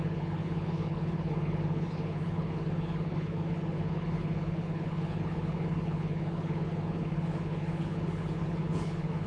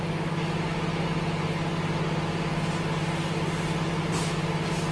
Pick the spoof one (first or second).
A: first